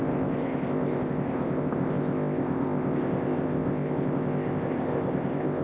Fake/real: fake